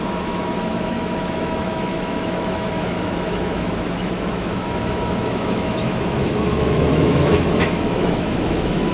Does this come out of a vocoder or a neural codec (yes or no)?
yes